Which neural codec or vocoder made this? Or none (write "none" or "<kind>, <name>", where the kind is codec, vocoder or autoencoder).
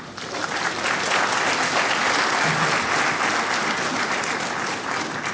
none